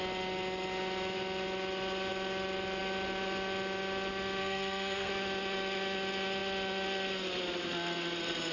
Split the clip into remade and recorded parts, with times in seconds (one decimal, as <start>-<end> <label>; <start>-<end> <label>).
0.0-4.4 recorded; 4.4-5.1 remade; 5.1-8.5 recorded